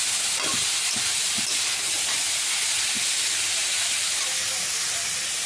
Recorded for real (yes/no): yes